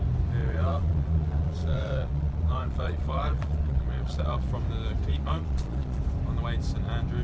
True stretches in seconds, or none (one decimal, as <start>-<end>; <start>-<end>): 0.0-0.4; 4.5-5.1; 6.0-7.2